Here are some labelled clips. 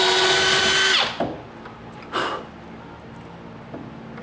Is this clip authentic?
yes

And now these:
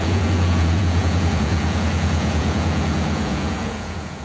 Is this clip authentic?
no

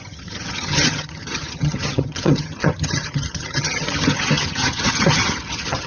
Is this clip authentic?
no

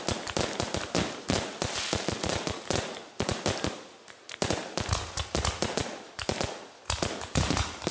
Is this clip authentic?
yes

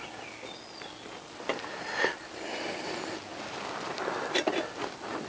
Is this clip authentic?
yes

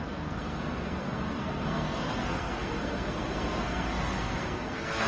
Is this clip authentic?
no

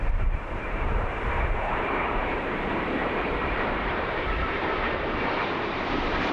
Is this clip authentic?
no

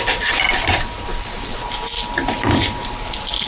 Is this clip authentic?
yes